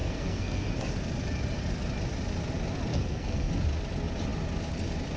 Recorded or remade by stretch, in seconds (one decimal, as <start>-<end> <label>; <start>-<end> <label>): 0.0-0.7 remade; 0.7-2.9 recorded; 2.9-3.5 remade; 3.5-5.2 recorded